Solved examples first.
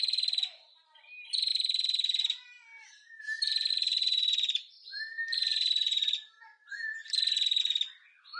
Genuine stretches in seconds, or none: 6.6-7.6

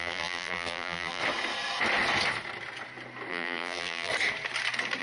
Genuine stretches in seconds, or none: 1.2-3.3; 4.1-5.0

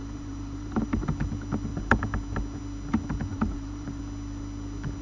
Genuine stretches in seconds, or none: 1.0-3.3; 4.0-5.0

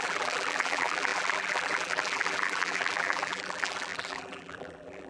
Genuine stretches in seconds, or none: none

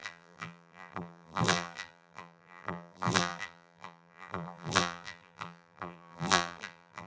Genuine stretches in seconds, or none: none

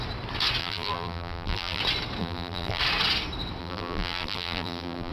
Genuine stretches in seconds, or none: 0.0-0.6; 1.8-2.2; 2.8-3.6

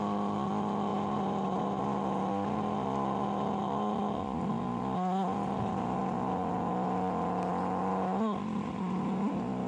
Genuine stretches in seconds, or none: 0.0-0.9; 1.8-9.7